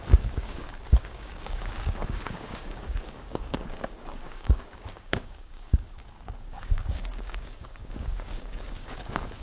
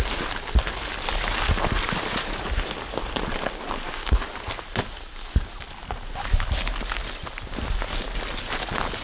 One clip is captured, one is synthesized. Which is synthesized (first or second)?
first